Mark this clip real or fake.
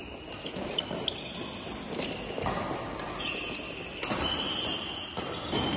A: real